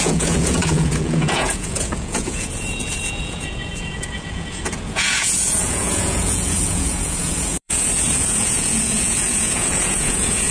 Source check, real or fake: fake